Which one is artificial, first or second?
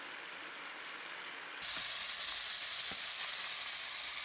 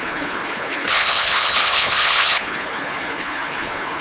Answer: second